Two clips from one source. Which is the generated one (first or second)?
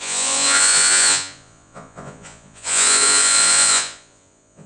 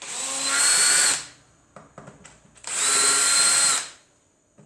first